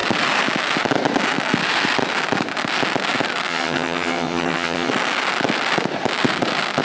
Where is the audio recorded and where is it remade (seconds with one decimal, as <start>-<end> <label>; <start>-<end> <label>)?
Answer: 0.0-3.5 recorded; 3.5-4.9 remade; 4.9-6.8 recorded